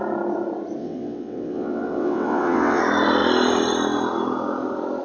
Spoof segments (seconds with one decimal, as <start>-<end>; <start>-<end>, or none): 0.8-2.8